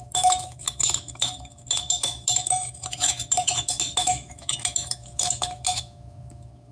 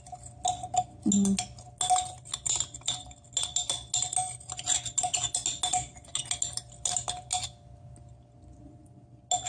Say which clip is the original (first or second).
second